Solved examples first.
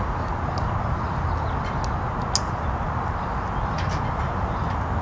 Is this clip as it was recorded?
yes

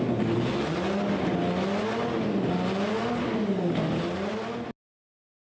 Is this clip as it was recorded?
yes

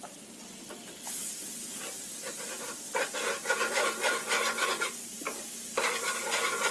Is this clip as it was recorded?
no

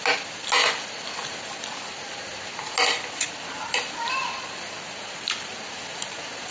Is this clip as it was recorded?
yes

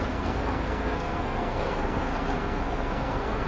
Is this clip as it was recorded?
no